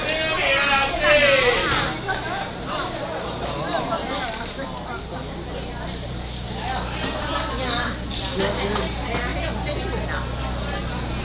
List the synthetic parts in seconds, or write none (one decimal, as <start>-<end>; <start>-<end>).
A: none

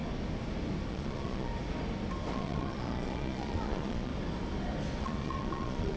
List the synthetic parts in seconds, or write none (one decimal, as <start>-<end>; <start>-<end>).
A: 0.9-1.5; 2.3-4.1; 5.0-6.0

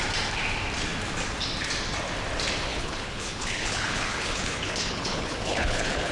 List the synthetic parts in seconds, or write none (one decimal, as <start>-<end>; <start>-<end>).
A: 2.7-6.1

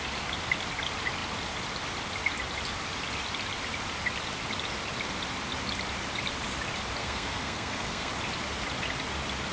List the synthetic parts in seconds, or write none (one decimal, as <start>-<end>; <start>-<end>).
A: 7.0-8.1